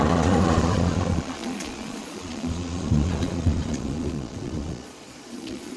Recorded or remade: remade